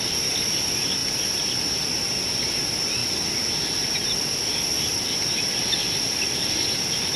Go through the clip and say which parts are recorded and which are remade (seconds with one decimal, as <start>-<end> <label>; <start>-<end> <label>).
0.0-1.0 recorded; 1.0-1.8 remade; 1.8-3.0 recorded; 3.0-7.2 remade